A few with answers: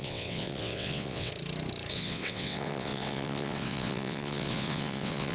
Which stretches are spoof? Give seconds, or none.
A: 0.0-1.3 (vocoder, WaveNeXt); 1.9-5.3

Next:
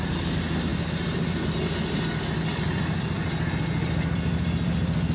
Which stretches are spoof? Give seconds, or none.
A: none

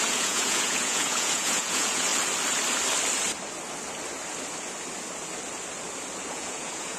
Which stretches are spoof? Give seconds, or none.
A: 0.0-2.1 (vocoder, Vocos); 6.3-7.0

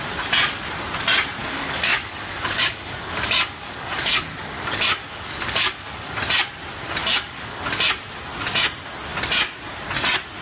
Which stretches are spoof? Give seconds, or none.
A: 1.4-6.2 (codec, DAC); 7.0-7.6

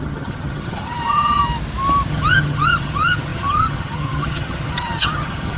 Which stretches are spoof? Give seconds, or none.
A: 0.0-1.4 (vocoder, HiFi-GAN); 2.1-5.6